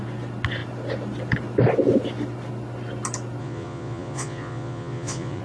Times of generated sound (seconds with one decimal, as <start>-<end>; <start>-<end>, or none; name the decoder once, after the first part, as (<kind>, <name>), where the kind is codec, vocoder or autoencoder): 3.4-5.4 (vocoder, Vocos)

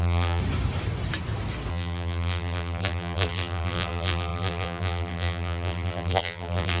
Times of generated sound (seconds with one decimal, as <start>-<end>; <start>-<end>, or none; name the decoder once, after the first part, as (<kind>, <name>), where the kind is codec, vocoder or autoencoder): 0.0-0.4 (vocoder, BigVGAN v2); 1.7-6.8